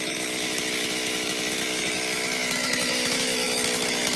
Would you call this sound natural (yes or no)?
no